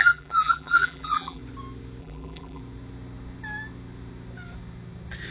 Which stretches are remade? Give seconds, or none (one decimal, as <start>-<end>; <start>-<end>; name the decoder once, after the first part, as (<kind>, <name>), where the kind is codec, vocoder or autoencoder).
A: 0.0-1.4 (vocoder, BigVGAN v2); 2.0-2.6

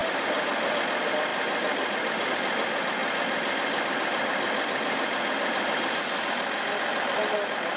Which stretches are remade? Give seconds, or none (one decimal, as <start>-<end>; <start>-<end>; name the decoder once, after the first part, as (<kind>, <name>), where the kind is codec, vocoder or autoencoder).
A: 0.8-1.3 (vocoder, BigVGAN v2); 2.3-3.0; 4.0-7.8

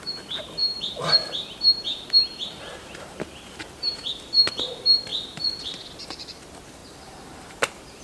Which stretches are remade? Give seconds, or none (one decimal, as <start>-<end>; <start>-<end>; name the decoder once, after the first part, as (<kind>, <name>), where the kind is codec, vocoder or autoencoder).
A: 0.0-5.1 (vocoder, BigVGAN v2); 6.0-8.0

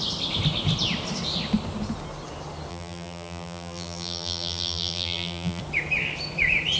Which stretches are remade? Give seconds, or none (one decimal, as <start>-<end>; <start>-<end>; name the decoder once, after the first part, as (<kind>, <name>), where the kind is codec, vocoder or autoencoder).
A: 2.7-5.6 (vocoder, BigVGAN v2)

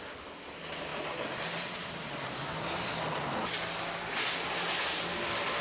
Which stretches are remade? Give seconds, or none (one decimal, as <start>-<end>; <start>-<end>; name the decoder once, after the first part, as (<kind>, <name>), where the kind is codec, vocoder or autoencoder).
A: none

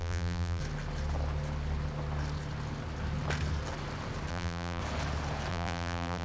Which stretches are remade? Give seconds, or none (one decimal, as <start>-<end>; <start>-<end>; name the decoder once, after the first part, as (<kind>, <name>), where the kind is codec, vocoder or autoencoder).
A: 0.0-0.6 (vocoder, BigVGAN v2); 4.3-4.8; 5.5-6.2

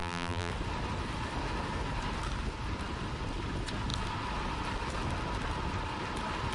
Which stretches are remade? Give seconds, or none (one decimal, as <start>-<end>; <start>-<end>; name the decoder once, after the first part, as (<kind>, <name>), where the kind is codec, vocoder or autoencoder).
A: 0.0-0.5 (vocoder, BigVGAN v2)